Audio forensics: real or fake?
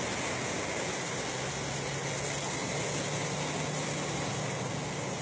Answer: real